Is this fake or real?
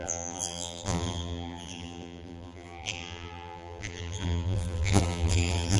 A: fake